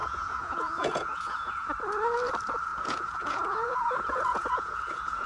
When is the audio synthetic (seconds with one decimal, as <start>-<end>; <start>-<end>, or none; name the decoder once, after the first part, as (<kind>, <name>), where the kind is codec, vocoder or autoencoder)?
0.0-1.7 (vocoder, Vocos); 2.7-5.3